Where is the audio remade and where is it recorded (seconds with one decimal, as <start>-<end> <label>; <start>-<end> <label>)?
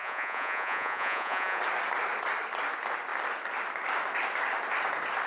0.0-1.6 remade; 1.6-5.3 recorded